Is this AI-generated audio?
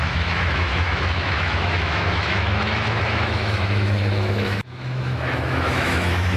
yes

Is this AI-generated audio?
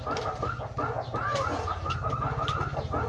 no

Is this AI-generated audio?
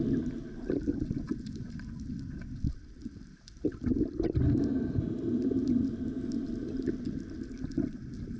no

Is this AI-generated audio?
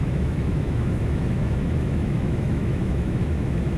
yes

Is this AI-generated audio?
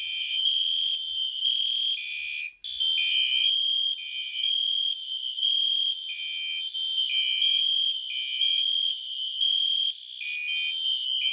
no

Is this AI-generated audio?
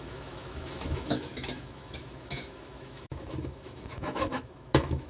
yes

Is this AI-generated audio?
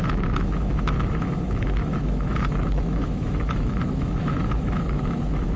yes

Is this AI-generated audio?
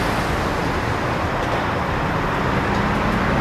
no